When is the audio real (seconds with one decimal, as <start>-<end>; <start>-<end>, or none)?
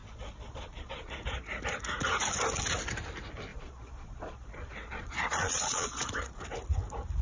1.1-3.5; 6.4-7.2